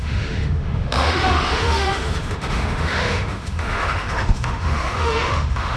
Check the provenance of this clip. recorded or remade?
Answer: remade